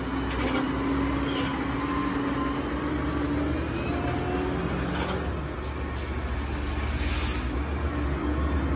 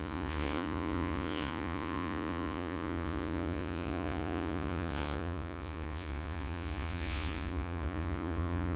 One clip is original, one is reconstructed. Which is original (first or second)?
first